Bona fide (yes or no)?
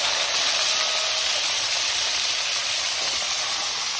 yes